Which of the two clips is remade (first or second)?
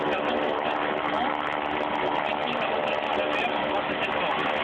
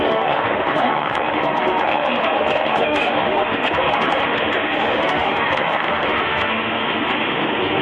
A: second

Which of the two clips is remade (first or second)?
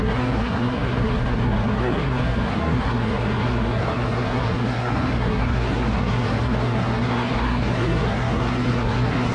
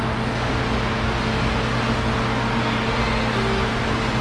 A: first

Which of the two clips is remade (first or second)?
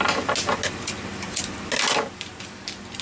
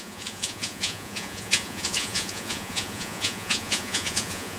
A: second